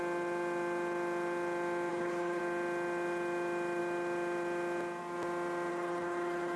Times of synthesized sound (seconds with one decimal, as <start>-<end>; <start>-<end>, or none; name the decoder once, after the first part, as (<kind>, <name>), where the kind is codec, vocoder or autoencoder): 1.9-2.4 (codec, HILCodec); 5.7-6.6